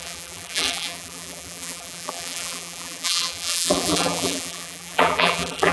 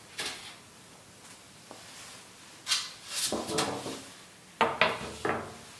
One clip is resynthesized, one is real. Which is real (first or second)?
second